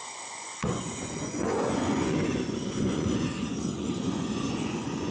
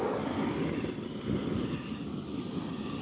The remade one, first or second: first